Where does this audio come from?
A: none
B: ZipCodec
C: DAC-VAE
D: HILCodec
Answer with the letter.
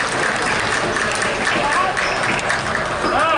A